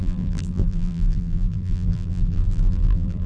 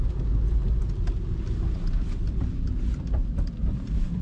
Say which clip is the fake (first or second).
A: first